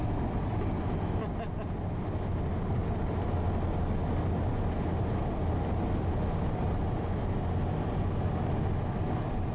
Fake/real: real